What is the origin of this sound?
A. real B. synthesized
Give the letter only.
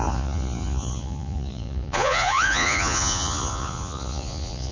B